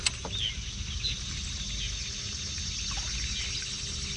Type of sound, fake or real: real